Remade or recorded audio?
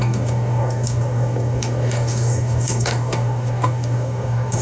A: remade